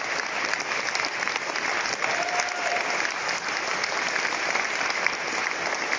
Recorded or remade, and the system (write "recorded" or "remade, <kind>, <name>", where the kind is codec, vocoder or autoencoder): recorded